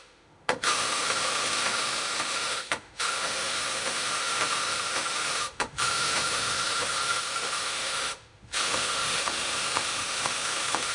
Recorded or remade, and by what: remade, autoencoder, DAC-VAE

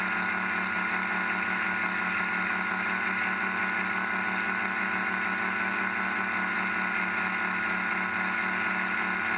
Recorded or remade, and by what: recorded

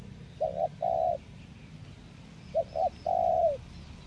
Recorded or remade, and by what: recorded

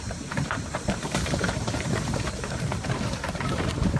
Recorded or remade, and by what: remade, vocoder, BigVGAN v2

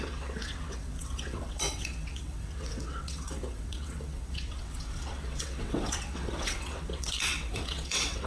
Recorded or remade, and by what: remade, vocoder, WaveNeXt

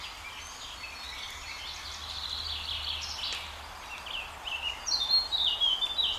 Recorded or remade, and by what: recorded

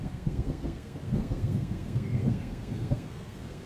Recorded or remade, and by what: remade, codec, SNAC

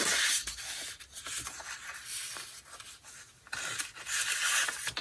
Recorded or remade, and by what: recorded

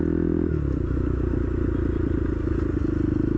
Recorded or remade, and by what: recorded